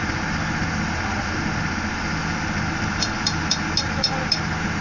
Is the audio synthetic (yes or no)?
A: no